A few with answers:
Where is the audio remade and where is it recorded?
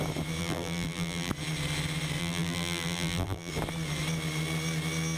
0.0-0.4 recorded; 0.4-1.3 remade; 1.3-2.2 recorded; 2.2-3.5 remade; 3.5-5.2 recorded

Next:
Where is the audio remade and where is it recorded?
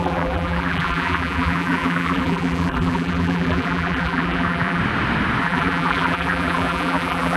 0.0-4.8 remade; 4.8-5.4 recorded; 5.4-7.4 remade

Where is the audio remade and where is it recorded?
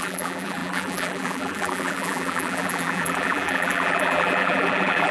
0.0-5.1 remade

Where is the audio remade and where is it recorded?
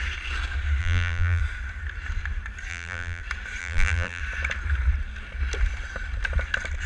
0.0-0.8 recorded; 0.8-1.4 remade; 1.4-2.7 recorded; 2.7-3.2 remade; 3.2-3.6 recorded; 3.6-4.2 remade; 4.2-6.9 recorded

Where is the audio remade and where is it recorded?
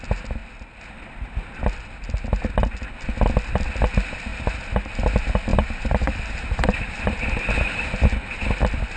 0.0-5.5 recorded; 5.5-7.5 remade; 7.5-9.0 recorded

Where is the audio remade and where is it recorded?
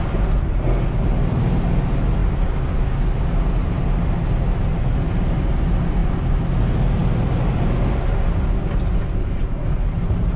0.0-10.4 recorded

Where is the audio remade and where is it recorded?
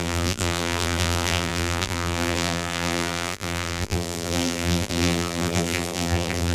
0.0-6.5 remade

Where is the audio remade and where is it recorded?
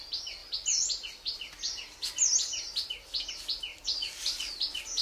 0.0-3.7 recorded; 3.7-4.5 remade; 4.5-5.0 recorded